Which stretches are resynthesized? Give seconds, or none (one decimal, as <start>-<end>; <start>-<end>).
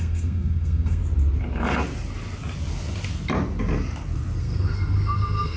0.0-1.0; 4.4-5.6